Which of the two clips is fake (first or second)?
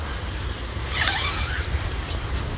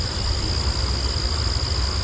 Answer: first